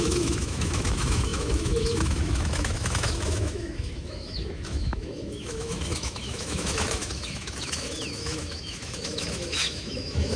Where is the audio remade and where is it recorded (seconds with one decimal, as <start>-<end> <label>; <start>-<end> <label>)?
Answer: 0.0-10.4 remade